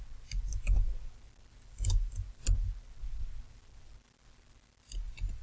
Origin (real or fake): real